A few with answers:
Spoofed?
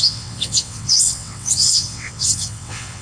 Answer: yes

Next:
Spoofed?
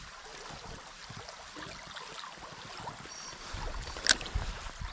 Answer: no